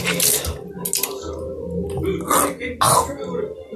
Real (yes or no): yes